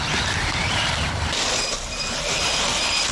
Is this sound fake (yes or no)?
yes